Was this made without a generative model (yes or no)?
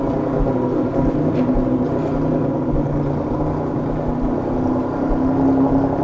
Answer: yes